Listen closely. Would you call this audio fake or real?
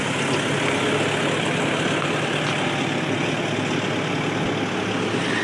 real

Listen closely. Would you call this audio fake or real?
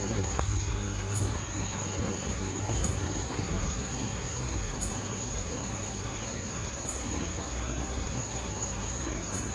fake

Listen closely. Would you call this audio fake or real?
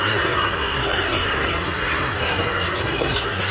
fake